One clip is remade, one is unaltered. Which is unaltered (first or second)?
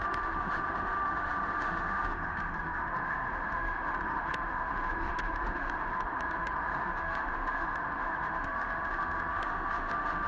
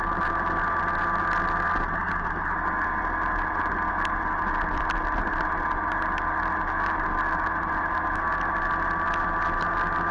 second